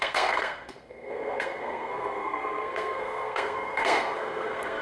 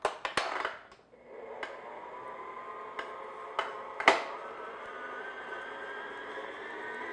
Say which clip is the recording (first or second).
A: second